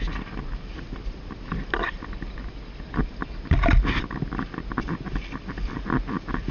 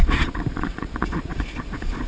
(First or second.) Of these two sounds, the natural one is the first